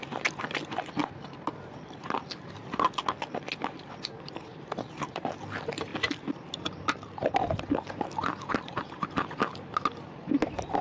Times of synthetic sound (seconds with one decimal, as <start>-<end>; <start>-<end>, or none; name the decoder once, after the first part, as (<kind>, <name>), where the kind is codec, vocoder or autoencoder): none